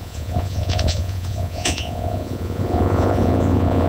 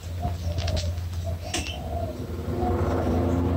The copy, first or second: first